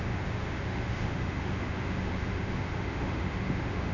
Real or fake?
fake